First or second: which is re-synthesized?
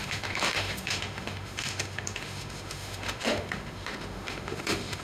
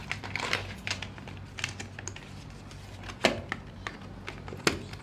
first